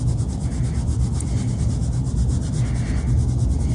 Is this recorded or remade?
recorded